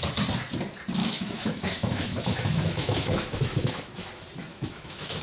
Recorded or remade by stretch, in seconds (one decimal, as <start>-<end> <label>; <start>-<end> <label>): 0.0-1.0 recorded; 1.0-4.1 remade; 4.1-4.5 recorded; 4.5-5.2 remade